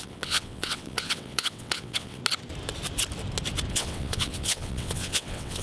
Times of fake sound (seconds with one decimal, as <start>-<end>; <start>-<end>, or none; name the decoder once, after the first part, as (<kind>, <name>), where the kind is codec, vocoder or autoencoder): 0.0-2.2 (vocoder, WaveNeXt); 3.7-5.6